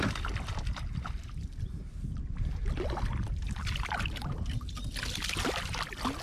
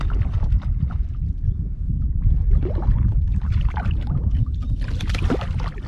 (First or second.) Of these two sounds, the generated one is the second